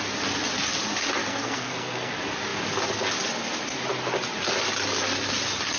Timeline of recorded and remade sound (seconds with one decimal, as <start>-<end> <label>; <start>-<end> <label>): 0.0-1.2 recorded; 1.2-2.1 remade; 2.1-5.8 recorded

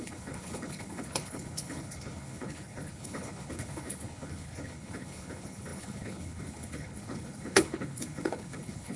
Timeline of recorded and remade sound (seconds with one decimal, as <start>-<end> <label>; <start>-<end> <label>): 0.0-9.0 remade

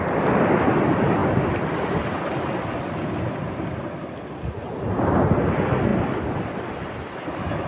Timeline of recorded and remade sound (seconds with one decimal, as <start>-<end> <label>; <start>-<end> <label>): 0.0-7.7 recorded

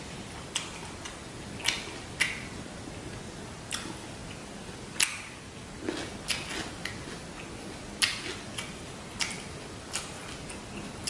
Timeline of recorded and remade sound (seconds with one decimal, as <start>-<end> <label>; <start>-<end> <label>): 0.0-11.1 recorded

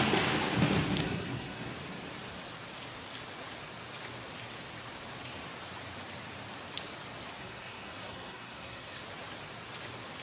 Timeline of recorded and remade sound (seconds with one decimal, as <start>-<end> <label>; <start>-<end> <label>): 0.0-1.0 recorded; 1.0-1.7 remade; 1.7-7.4 recorded; 7.4-9.0 remade; 9.0-10.2 recorded

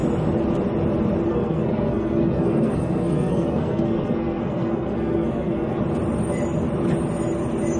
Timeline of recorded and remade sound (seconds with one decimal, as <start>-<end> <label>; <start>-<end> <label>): 0.0-1.3 recorded; 1.3-5.8 remade; 5.8-7.8 recorded